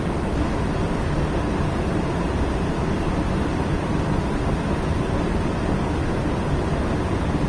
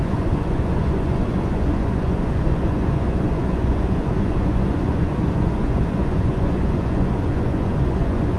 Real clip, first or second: first